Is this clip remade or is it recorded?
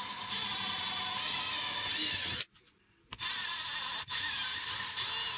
recorded